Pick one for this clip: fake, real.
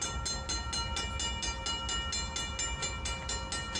real